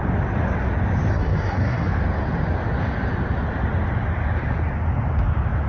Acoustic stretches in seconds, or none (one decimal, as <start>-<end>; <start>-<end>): 0.0-1.1; 1.9-5.7